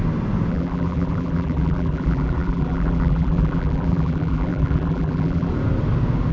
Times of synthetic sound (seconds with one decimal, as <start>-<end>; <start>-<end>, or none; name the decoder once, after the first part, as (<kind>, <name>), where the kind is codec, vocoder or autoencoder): 0.5-5.5 (vocoder, BigVGAN v2)